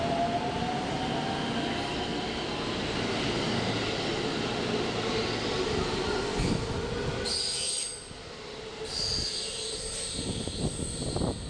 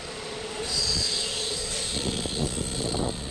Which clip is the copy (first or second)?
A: second